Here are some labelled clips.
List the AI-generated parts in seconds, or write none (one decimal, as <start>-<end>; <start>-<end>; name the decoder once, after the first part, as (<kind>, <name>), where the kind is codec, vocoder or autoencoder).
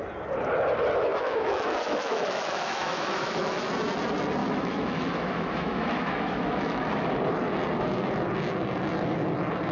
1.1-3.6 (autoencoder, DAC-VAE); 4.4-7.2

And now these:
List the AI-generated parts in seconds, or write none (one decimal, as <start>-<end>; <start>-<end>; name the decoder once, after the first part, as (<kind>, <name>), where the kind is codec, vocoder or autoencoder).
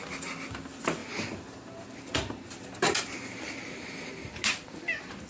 none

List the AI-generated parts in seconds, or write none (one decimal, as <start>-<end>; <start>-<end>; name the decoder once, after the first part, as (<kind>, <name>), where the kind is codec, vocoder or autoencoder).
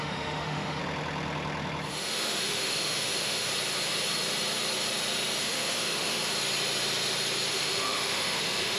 0.0-0.8 (autoencoder, DAC-VAE); 1.9-3.5; 5.4-6.2; 7.5-8.8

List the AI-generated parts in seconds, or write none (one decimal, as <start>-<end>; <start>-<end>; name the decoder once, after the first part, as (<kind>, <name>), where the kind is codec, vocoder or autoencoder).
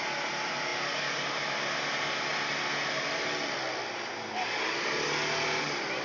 none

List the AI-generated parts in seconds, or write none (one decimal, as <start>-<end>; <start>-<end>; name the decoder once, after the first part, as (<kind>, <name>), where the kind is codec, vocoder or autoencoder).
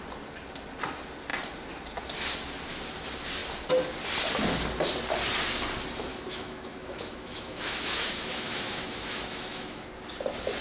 6.1-9.9 (autoencoder, DAC-VAE)